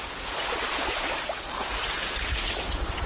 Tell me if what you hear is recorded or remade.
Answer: remade